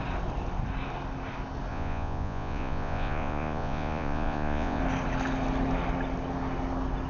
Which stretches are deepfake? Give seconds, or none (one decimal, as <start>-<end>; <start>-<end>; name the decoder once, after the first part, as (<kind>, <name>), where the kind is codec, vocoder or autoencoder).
1.7-4.8 (vocoder, Vocos)